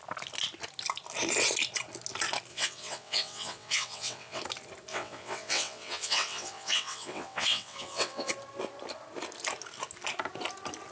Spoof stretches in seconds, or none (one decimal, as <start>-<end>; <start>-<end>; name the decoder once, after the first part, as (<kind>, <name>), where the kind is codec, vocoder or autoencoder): 2.5-4.4 (vocoder, WaveNeXt); 4.9-8.3